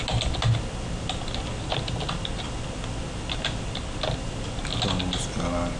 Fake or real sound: real